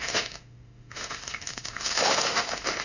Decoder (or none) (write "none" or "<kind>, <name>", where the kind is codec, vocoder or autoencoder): autoencoder, DAC-VAE